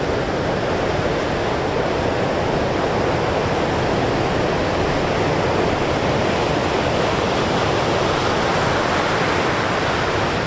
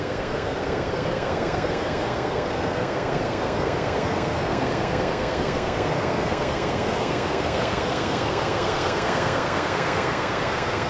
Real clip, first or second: first